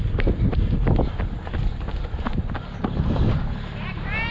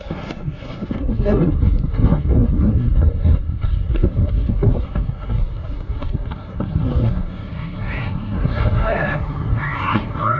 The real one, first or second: first